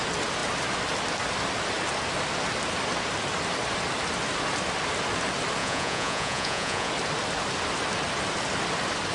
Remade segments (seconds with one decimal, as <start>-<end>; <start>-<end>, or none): 5.6-6.9